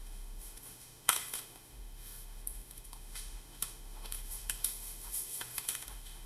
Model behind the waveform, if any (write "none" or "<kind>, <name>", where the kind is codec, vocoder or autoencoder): autoencoder, DAC-VAE